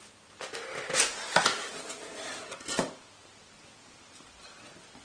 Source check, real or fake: real